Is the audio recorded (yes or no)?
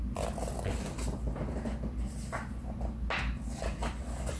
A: yes